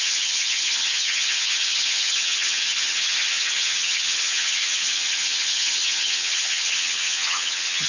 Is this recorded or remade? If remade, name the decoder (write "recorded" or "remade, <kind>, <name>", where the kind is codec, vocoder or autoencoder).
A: remade, vocoder, HiFi-GAN